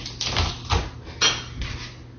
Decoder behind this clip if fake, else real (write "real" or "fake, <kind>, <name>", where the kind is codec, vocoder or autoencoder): real